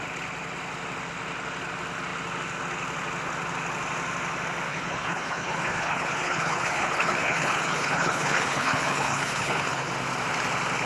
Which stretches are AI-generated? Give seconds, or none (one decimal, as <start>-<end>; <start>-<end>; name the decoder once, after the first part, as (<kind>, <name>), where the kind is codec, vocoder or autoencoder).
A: 4.7-9.9 (codec, HILCodec)